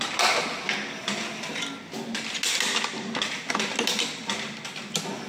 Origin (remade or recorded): recorded